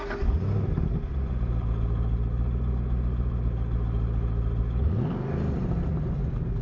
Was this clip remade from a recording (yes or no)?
no